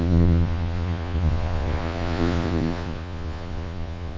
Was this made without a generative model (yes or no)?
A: no